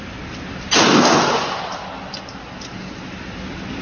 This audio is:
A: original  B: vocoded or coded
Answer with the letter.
A